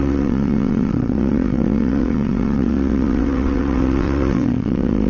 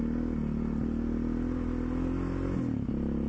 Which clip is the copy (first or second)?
first